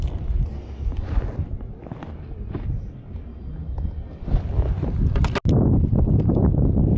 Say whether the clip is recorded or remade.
recorded